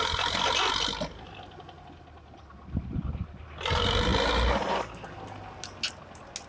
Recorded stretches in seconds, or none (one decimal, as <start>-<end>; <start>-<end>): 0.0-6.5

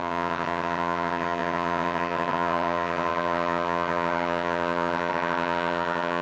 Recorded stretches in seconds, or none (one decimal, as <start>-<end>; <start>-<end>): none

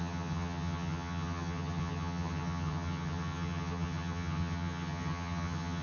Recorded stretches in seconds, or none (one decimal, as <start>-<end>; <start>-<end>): none